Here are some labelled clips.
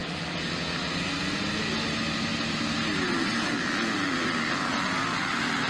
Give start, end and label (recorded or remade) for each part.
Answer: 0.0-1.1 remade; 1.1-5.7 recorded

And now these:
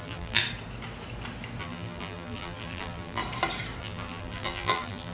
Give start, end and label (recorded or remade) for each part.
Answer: 0.0-0.4 remade; 0.4-1.6 recorded; 1.6-3.2 remade; 3.2-3.8 recorded; 3.8-5.1 remade

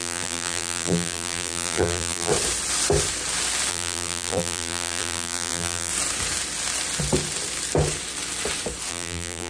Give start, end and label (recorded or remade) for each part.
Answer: 0.0-2.3 remade; 2.3-3.7 recorded; 3.7-5.9 remade; 5.9-8.9 recorded; 8.9-9.5 remade

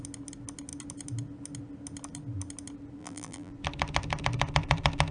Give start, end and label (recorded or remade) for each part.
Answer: 0.0-3.0 recorded; 3.0-3.5 remade; 3.5-5.1 recorded

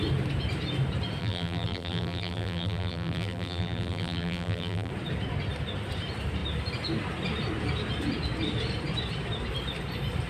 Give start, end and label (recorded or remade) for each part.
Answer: 0.0-1.2 recorded; 1.2-4.9 remade; 4.9-10.3 recorded